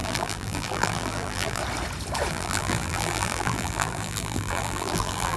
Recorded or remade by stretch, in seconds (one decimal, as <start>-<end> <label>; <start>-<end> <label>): 0.0-1.6 remade; 1.6-2.3 recorded; 2.3-5.4 remade